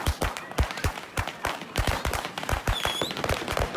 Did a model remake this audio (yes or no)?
yes